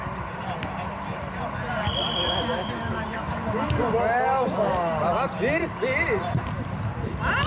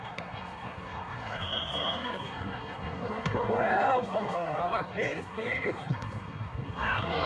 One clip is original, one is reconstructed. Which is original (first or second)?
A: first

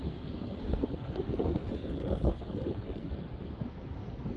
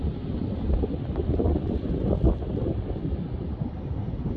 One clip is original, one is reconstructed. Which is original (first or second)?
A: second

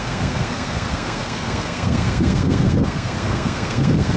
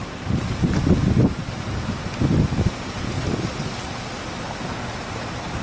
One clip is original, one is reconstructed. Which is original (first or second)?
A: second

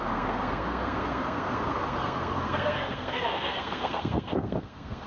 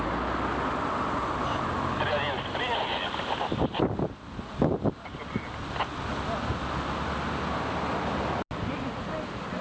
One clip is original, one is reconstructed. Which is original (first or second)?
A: second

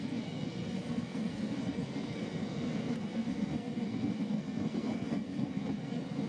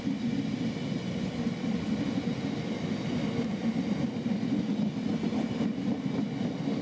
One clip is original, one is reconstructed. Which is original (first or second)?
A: second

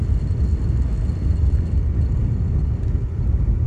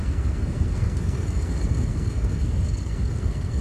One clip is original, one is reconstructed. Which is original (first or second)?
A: first